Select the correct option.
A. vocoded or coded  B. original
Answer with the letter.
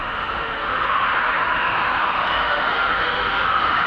A